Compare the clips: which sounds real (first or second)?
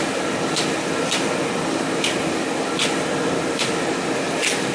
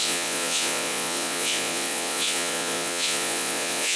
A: first